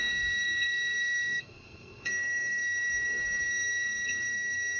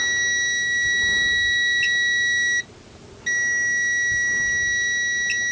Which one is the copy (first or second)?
first